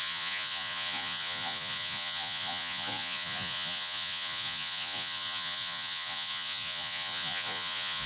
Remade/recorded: remade